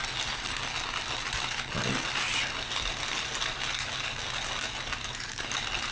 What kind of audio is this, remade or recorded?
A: recorded